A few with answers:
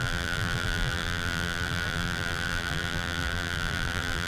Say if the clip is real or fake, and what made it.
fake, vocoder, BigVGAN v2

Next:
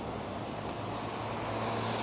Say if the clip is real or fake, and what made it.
real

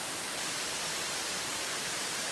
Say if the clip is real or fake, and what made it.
fake, vocoder, BigVGAN v2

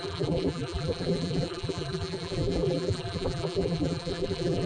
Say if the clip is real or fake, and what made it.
fake, vocoder, BigVGAN v2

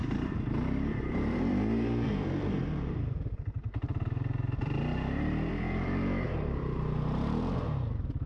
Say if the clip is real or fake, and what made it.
fake, vocoder, BigVGAN v2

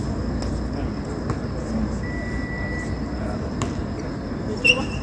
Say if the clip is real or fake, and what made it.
real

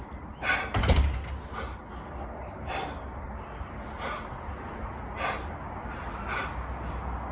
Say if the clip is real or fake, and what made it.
real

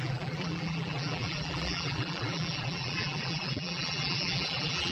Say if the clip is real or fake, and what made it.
fake, vocoder, BigVGAN v2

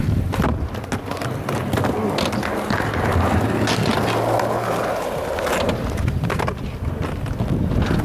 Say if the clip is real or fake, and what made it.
real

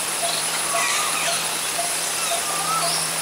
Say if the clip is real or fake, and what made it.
fake, vocoder, BigVGAN v2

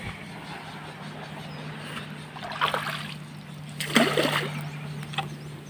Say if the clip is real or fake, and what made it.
real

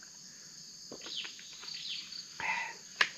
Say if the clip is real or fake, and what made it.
real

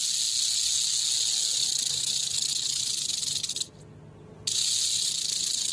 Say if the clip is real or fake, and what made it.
real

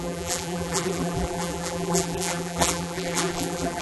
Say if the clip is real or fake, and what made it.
fake, vocoder, BigVGAN v2